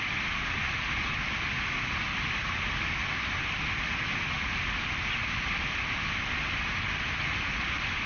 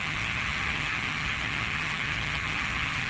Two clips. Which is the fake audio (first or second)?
second